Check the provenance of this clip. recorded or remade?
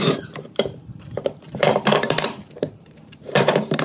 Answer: remade